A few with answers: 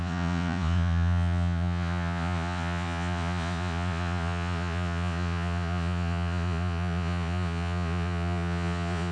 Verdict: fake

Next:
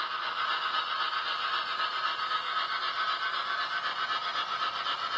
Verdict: real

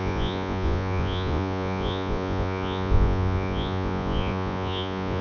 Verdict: fake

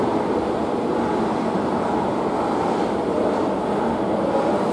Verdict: real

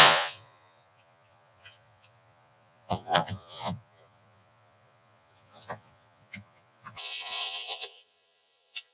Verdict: fake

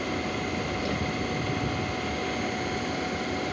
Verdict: real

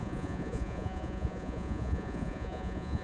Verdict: fake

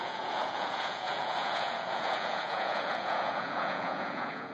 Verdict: fake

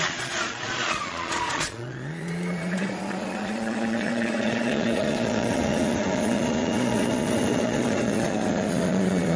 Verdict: fake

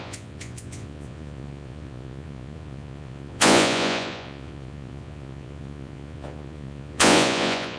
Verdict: fake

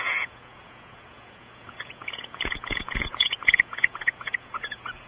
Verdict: fake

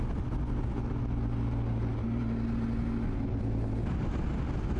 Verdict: real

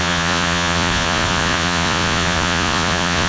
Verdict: fake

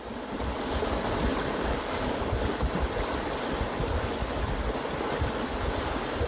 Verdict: real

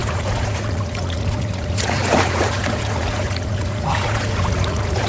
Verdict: fake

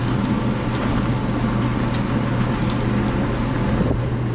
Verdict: real